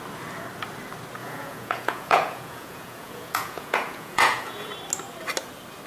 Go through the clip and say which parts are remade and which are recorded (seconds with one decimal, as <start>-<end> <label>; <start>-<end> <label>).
0.0-1.2 recorded; 1.2-4.7 remade; 4.7-5.9 recorded